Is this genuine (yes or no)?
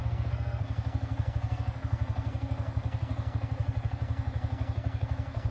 no